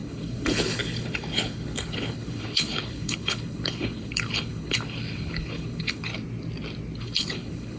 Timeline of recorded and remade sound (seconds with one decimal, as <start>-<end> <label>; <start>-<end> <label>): 0.0-6.1 remade; 6.1-7.0 recorded; 7.0-7.8 remade